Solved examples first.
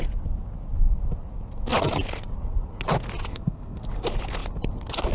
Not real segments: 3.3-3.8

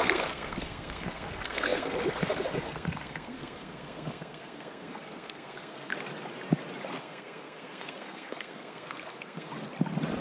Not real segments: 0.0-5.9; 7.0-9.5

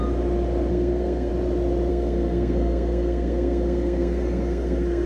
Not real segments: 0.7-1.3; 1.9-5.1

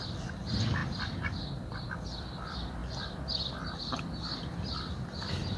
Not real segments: none